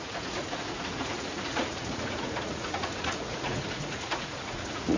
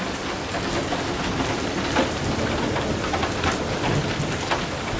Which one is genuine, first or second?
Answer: second